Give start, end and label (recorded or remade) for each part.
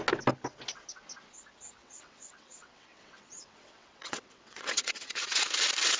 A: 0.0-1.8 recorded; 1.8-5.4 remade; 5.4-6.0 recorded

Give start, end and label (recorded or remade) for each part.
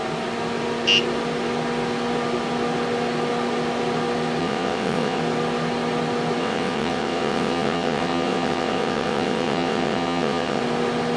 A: 0.0-4.4 recorded; 4.4-5.2 remade; 5.2-6.4 recorded; 6.4-10.6 remade; 10.6-11.2 recorded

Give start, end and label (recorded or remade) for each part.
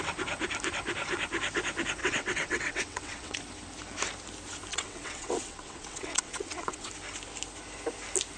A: 0.0-2.0 recorded; 2.0-3.4 remade; 3.4-4.7 recorded; 4.7-6.9 remade; 6.9-8.4 recorded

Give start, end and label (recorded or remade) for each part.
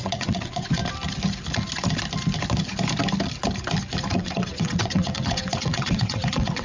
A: 0.0-0.8 remade; 0.8-4.1 recorded; 4.1-6.6 remade